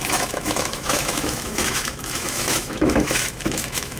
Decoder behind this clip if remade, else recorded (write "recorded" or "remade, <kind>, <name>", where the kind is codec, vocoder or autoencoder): remade, autoencoder, DAC-VAE